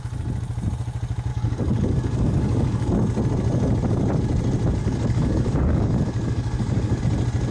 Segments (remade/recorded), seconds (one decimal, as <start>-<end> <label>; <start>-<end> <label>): 0.0-1.3 recorded; 1.3-2.9 remade; 2.9-4.8 recorded; 4.8-7.0 remade; 7.0-7.5 recorded